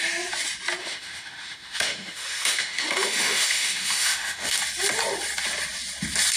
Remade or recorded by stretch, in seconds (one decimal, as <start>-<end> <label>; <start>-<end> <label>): 0.0-0.8 recorded; 0.8-4.6 remade; 4.6-6.4 recorded